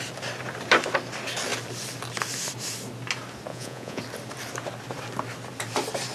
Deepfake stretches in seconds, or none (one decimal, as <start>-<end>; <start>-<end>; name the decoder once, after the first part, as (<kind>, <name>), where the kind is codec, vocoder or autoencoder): 3.5-4.0 (vocoder, Vocos)